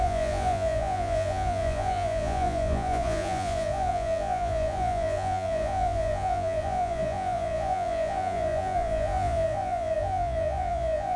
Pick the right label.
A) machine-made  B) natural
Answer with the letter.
A